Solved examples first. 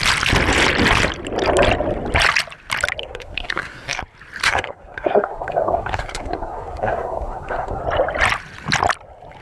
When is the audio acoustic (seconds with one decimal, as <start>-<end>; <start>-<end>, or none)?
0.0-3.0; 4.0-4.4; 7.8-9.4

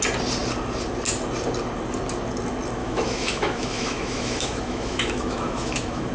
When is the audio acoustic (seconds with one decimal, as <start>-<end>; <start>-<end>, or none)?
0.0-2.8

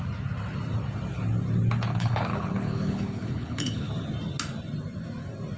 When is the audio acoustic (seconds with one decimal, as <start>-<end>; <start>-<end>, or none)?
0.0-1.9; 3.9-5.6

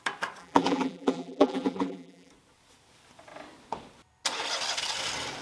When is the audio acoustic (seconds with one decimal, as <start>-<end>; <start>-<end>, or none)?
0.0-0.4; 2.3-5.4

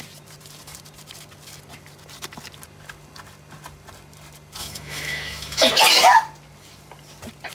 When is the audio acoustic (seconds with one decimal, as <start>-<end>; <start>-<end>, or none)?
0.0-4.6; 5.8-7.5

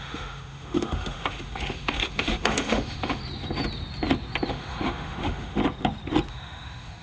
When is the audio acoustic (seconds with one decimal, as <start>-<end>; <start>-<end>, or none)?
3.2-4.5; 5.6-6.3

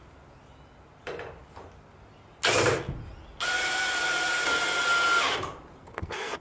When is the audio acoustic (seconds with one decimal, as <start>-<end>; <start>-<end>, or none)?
0.0-5.8